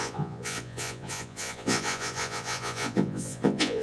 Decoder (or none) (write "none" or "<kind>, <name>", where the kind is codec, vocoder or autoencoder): vocoder, Vocos